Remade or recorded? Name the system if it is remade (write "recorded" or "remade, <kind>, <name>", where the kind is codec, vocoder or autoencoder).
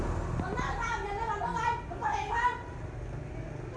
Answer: recorded